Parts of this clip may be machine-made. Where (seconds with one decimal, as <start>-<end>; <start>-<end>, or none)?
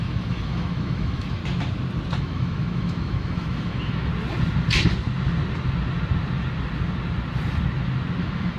0.0-1.4; 2.2-4.1; 8.2-8.6